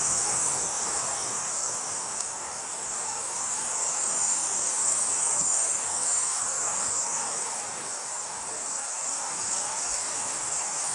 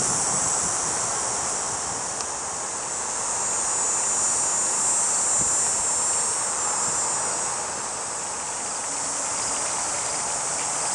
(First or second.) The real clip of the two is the second